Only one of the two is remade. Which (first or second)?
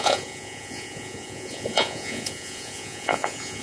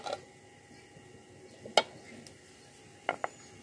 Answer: first